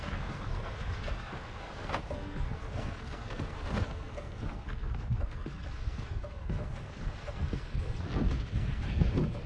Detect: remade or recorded remade